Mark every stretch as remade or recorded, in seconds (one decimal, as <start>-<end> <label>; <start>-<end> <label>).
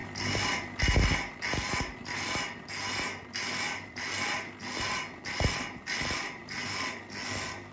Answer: 0.0-7.7 recorded